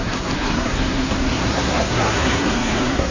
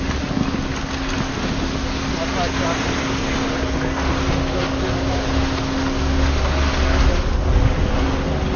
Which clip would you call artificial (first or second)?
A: first